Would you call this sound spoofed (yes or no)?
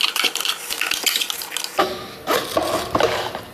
no